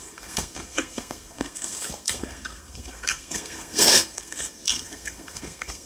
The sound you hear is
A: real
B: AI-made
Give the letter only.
B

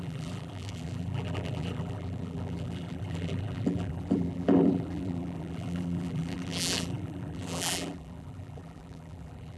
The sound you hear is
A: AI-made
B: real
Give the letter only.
A